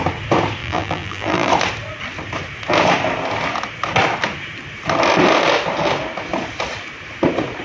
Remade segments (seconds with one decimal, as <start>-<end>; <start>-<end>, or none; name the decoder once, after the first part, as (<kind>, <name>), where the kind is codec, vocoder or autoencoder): 0.6-1.5 (vocoder, BigVGAN v2)